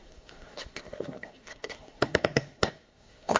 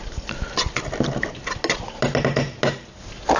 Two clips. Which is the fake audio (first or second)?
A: first